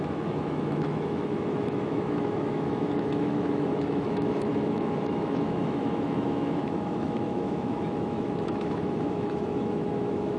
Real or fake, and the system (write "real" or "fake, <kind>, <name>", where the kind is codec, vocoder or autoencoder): fake, autoencoder, DAC-VAE